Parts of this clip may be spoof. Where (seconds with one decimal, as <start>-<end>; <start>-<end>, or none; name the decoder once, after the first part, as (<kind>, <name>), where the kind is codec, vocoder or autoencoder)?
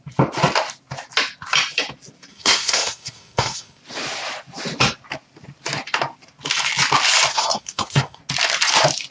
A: 2.3-3.8 (codec, SNAC); 7.3-8.2